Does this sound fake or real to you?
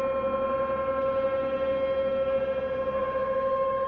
real